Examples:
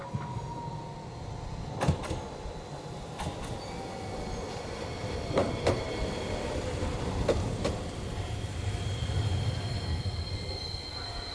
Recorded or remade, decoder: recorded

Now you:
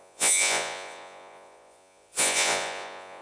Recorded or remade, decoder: remade, vocoder, Vocos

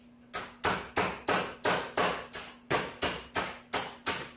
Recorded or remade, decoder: recorded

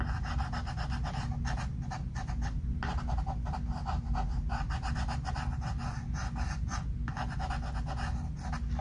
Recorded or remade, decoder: recorded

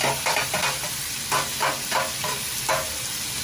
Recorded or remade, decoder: recorded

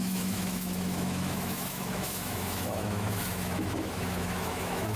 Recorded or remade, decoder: remade, autoencoder, DAC-VAE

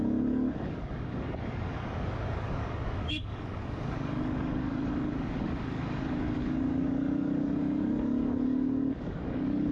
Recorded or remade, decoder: remade, codec, DAC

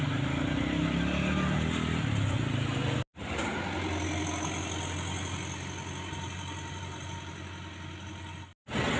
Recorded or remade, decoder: recorded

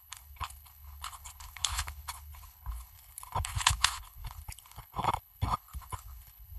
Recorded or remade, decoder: remade, codec, HILCodec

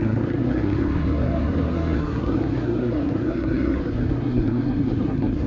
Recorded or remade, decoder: remade, codec, SNAC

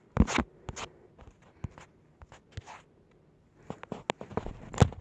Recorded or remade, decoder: recorded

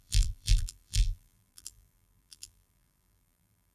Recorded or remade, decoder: remade, vocoder, BigVGAN v2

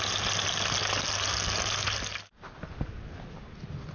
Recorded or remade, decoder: recorded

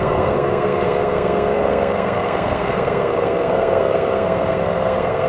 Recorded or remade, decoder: remade, codec, SNAC